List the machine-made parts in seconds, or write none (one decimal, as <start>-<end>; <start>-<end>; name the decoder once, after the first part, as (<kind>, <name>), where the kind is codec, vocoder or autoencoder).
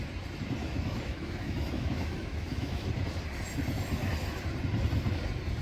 0.6-2.9 (autoencoder, DAC-VAE)